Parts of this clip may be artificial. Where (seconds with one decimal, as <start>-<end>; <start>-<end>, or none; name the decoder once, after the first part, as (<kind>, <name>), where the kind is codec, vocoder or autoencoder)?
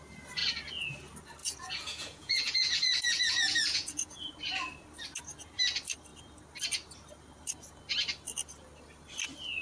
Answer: 1.4-4.3 (vocoder, Vocos)